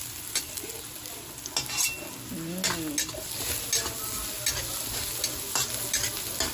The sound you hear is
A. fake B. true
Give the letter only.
B